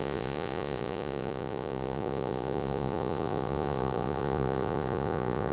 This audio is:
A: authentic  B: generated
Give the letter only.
B